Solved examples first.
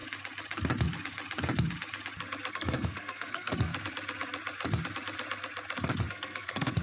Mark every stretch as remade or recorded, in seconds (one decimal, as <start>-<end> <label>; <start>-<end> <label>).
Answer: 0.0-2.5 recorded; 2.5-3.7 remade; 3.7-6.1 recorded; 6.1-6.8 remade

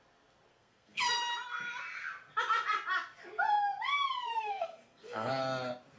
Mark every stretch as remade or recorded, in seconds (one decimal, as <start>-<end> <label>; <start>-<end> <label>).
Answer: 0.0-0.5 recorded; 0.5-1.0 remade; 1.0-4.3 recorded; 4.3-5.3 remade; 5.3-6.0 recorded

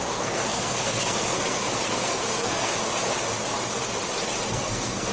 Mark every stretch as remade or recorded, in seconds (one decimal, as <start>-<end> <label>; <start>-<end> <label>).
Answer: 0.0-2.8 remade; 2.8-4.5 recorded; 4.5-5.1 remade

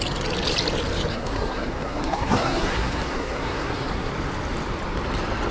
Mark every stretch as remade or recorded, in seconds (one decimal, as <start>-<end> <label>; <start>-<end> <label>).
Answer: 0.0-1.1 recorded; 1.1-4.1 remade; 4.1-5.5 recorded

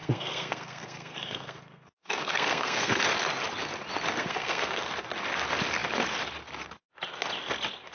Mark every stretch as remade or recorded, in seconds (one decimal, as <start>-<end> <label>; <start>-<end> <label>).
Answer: 0.0-3.0 remade; 3.0-4.2 recorded; 4.2-4.9 remade; 4.9-7.9 recorded

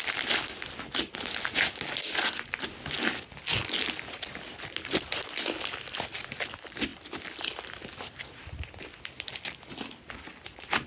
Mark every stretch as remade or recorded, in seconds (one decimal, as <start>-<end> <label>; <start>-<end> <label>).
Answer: 0.0-10.9 recorded